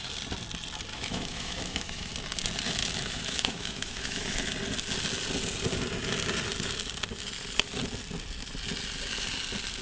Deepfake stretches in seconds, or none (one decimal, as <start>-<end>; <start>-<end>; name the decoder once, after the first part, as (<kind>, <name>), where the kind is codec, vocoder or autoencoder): 0.9-2.1 (autoencoder, DAC-VAE); 2.8-4.5